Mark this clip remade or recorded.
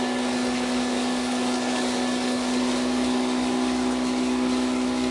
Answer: remade